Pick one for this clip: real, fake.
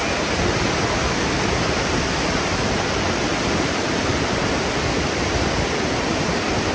fake